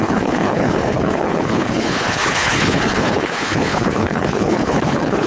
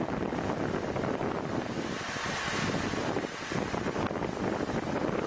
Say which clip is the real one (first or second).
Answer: second